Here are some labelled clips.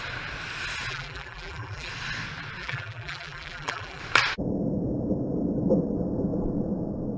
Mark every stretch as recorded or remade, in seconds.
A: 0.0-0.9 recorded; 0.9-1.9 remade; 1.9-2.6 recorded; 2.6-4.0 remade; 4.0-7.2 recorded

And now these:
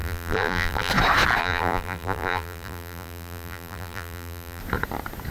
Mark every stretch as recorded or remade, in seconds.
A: 0.0-0.9 remade; 0.9-1.4 recorded; 1.4-4.6 remade; 4.6-5.3 recorded

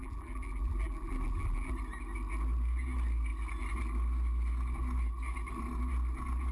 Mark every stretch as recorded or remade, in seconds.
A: 0.0-1.7 remade; 1.7-6.5 recorded

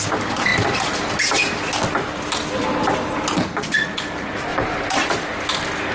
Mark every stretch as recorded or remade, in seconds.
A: 0.0-4.5 recorded; 4.5-5.1 remade; 5.1-5.9 recorded

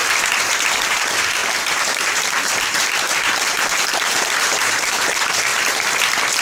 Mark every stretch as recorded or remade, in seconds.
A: 0.0-0.9 recorded; 0.9-5.5 remade; 5.5-6.4 recorded

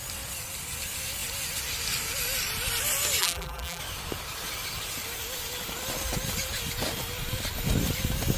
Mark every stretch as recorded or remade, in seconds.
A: 0.0-3.2 recorded; 3.2-3.8 remade; 3.8-8.4 recorded

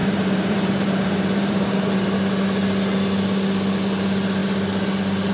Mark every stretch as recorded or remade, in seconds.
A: 0.0-1.8 remade; 1.8-5.3 recorded